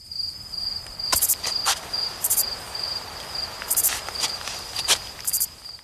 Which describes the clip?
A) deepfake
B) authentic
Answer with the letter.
A